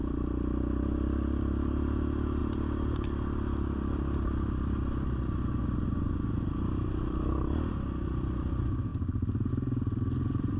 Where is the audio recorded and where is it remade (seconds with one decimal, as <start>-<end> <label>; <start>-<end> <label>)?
0.0-10.6 recorded